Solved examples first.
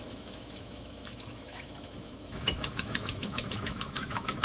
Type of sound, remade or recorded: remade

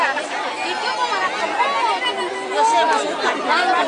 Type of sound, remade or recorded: recorded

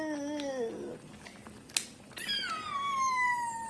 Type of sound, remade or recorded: recorded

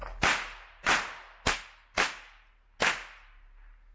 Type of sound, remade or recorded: recorded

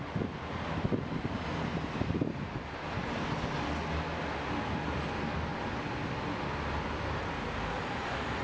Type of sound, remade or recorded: recorded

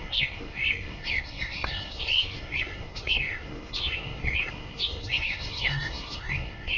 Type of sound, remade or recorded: remade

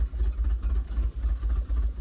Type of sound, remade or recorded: recorded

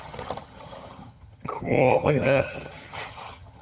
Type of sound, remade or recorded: remade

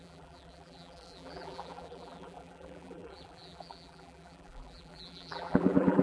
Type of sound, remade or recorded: remade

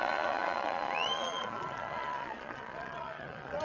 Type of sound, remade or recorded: remade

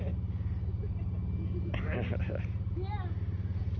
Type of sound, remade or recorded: recorded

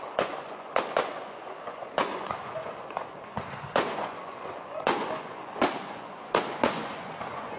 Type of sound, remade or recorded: remade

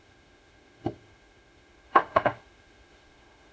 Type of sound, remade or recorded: remade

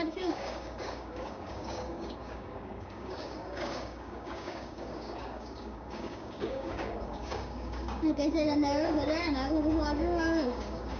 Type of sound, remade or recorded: remade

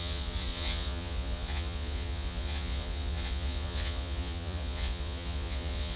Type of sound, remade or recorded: remade